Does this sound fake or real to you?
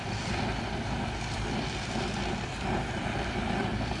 fake